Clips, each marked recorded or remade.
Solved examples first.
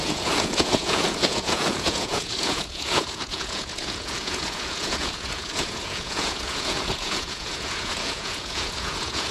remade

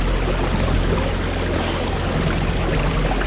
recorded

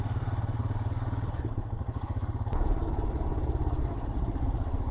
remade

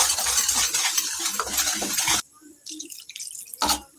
recorded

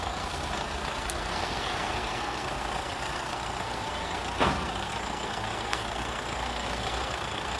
remade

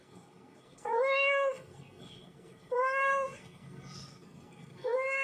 remade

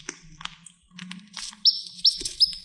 recorded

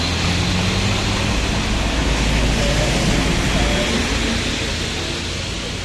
recorded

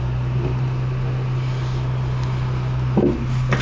recorded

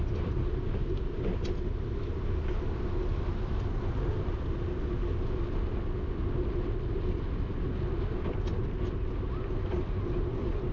recorded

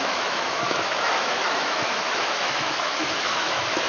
remade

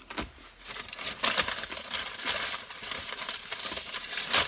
recorded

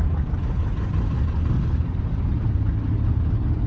recorded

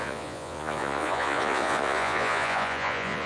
remade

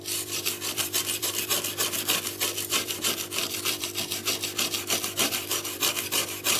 remade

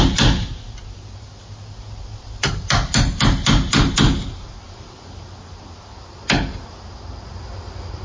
recorded